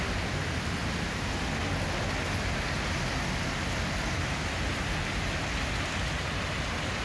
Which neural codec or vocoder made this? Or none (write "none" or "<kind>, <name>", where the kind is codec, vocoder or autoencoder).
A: none